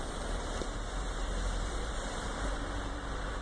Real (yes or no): no